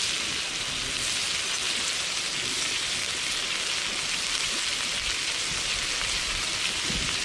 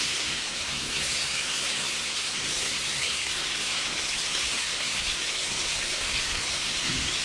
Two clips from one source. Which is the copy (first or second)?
second